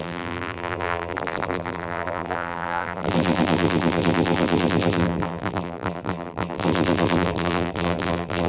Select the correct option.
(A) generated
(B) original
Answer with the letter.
A